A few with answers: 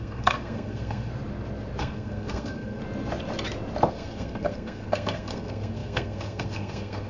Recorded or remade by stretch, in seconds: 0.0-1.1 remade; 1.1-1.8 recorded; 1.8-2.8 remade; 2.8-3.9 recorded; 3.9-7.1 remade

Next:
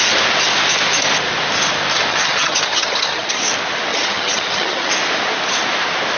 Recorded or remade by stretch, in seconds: 0.0-2.1 recorded; 2.1-3.4 remade; 3.4-3.9 recorded; 3.9-4.9 remade; 4.9-6.2 recorded

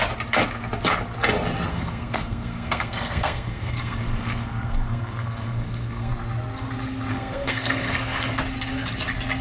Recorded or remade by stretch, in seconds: 0.0-1.7 recorded; 1.7-6.1 remade; 6.1-7.1 recorded; 7.1-8.4 remade; 8.4-9.4 recorded

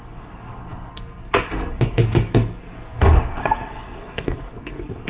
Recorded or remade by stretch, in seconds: 0.0-5.1 remade

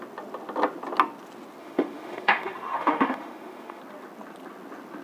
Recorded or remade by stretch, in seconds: 0.0-1.6 recorded; 1.6-3.8 remade; 3.8-5.0 recorded

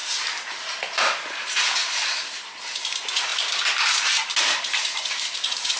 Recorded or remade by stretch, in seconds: 0.0-5.8 recorded

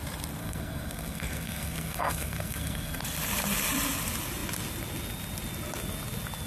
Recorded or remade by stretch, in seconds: 0.0-0.4 recorded; 0.4-3.0 remade; 3.0-6.5 recorded

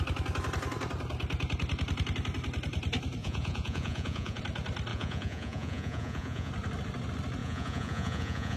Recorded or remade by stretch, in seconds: 0.0-3.2 recorded; 3.2-4.4 remade; 4.4-4.9 recorded; 4.9-6.5 remade; 6.5-7.4 recorded; 7.4-8.6 remade